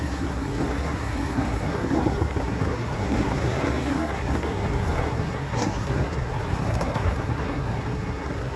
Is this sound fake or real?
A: fake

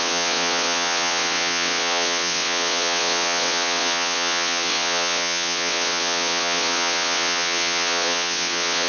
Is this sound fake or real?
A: fake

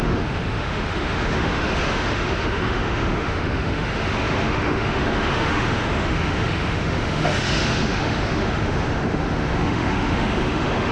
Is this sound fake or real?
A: fake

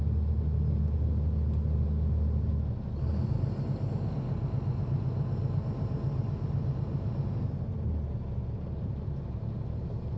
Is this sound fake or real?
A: real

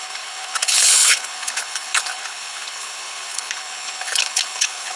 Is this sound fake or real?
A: fake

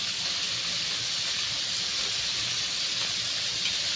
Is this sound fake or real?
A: real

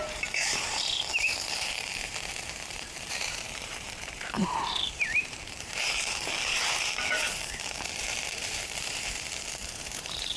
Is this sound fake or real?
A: fake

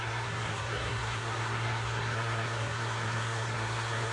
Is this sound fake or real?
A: fake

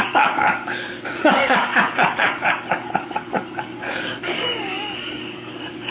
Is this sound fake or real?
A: fake